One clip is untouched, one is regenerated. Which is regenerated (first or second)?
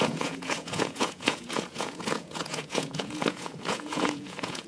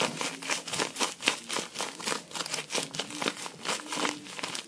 first